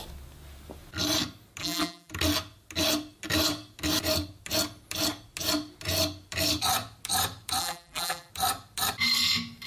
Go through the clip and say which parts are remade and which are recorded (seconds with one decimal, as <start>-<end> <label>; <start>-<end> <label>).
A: 0.0-1.6 recorded; 1.6-2.1 remade; 2.1-7.6 recorded; 7.6-8.3 remade; 8.3-9.7 recorded